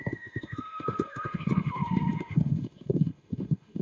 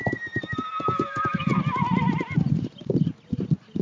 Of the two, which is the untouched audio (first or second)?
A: second